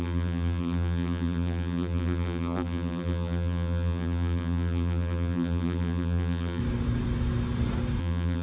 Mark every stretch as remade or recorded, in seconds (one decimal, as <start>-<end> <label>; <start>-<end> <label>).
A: 0.0-6.6 remade; 6.6-8.0 recorded; 8.0-8.4 remade